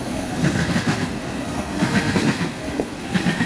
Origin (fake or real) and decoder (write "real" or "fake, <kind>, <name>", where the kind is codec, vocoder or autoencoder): fake, codec, SNAC